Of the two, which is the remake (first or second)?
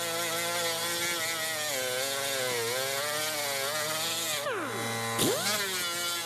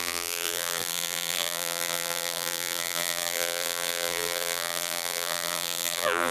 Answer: second